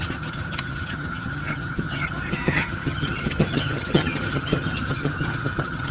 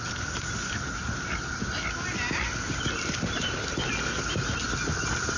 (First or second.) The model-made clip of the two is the first